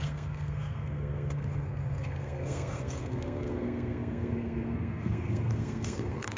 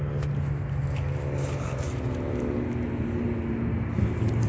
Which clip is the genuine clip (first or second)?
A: second